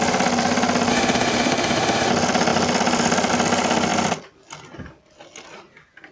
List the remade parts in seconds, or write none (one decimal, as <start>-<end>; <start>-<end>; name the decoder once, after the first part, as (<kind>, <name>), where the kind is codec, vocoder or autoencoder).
0.9-2.1 (autoencoder, DAC-VAE)